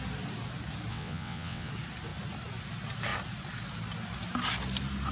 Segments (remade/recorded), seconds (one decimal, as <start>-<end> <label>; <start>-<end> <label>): 0.0-0.9 recorded; 0.9-1.7 remade; 1.7-5.1 recorded

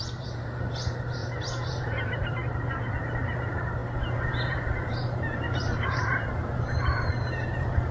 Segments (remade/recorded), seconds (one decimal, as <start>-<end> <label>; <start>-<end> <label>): 0.0-3.8 remade; 3.8-4.5 recorded; 4.5-7.9 remade

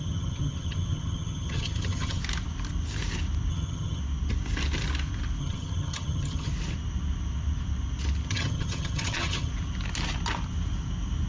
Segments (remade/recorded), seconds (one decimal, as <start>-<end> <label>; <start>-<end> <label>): 0.0-2.2 remade; 2.2-3.5 recorded; 3.5-4.0 remade; 4.0-5.4 recorded; 5.4-6.5 remade; 6.5-8.3 recorded; 8.3-9.5 remade; 9.5-11.3 recorded

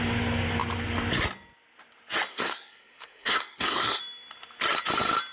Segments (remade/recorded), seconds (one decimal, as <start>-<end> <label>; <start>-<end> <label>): 0.0-2.3 recorded; 2.3-4.0 remade; 4.0-5.3 recorded

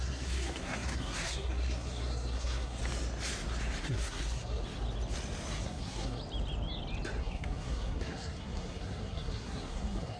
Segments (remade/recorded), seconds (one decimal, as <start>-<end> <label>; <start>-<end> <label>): 0.0-2.8 remade; 2.8-3.8 recorded; 3.8-4.6 remade; 4.6-5.6 recorded; 5.6-6.2 remade; 6.2-7.2 recorded; 7.2-10.2 remade

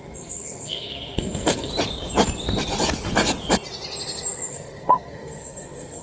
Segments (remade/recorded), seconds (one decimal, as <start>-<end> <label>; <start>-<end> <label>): 0.0-1.7 remade; 1.7-4.5 recorded; 4.5-6.0 remade